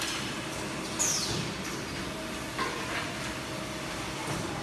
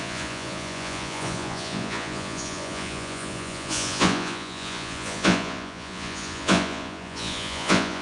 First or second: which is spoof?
second